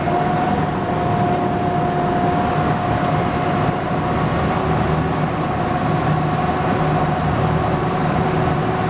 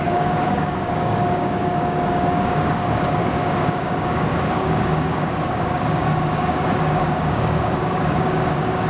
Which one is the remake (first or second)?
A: second